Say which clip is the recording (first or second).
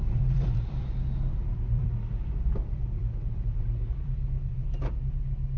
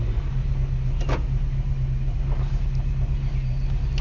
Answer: second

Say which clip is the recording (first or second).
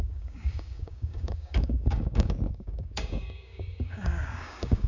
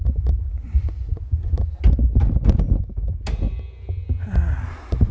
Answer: second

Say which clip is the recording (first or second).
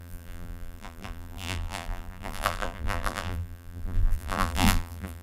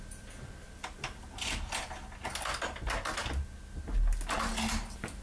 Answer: second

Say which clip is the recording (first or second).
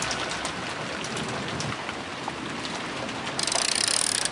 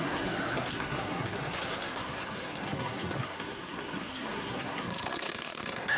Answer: first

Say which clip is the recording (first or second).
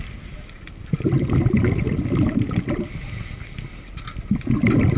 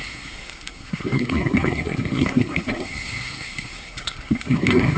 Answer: first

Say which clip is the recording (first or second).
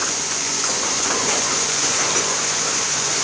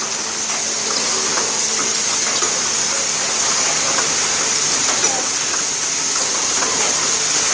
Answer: second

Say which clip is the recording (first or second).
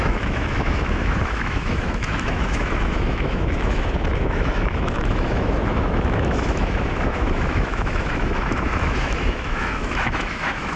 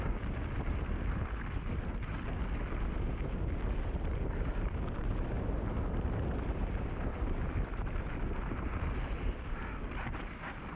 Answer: second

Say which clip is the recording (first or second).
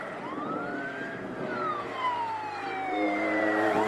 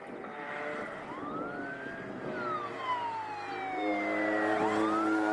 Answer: second